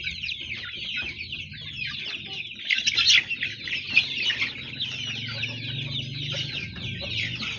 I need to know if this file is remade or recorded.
recorded